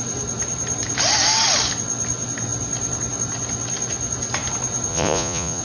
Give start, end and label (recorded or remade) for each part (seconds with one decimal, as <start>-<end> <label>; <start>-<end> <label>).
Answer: 0.0-4.9 recorded; 4.9-5.6 remade